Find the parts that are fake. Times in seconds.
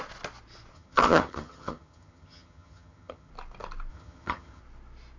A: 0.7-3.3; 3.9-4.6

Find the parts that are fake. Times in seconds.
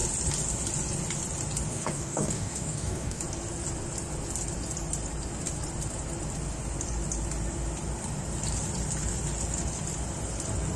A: 1.7-3.2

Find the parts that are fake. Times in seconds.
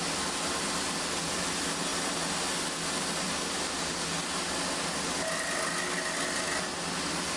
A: none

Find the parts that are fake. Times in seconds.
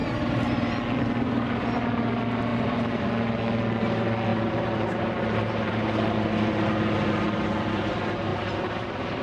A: 2.5-3.1; 4.3-6.0; 8.3-9.2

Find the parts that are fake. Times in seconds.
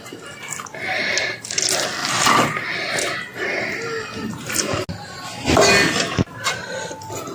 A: none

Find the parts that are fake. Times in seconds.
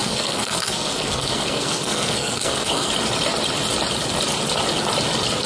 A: 0.0-2.9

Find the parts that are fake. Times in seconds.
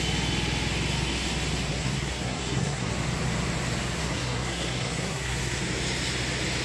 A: 1.7-2.9; 4.0-5.6